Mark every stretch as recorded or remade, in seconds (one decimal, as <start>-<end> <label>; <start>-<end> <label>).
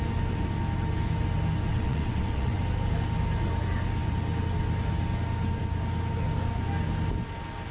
0.0-1.7 recorded; 1.7-2.6 remade; 2.6-7.7 recorded